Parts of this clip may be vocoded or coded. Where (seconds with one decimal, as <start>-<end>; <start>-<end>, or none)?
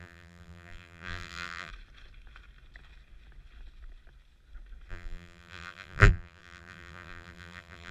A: 0.0-1.7; 4.9-7.9